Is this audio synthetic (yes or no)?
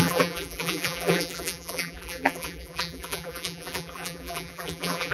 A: yes